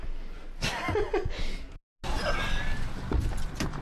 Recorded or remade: recorded